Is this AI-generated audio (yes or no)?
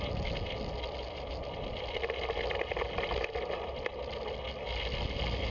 no